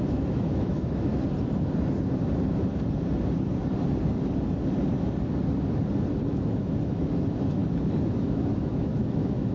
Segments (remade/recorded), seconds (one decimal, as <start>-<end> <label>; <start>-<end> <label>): 0.0-1.1 remade; 1.1-6.3 recorded; 6.3-9.5 remade